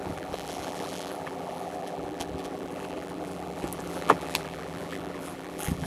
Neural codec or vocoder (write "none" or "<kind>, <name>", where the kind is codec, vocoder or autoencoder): vocoder, BigVGAN v2